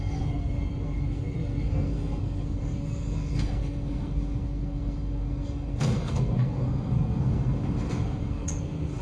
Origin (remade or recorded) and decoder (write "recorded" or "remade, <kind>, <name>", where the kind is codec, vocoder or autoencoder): remade, codec, SNAC